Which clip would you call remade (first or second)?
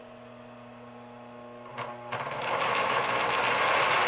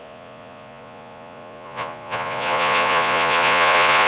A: second